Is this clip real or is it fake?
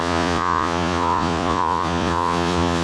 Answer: fake